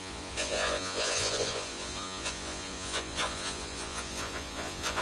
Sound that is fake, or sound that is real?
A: fake